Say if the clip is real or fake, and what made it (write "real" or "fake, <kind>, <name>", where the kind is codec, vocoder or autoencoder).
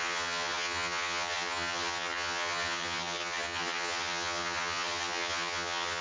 fake, vocoder, HiFi-GAN